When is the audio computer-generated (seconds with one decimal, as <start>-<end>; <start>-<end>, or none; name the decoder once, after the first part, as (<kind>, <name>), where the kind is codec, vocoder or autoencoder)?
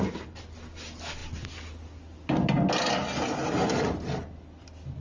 none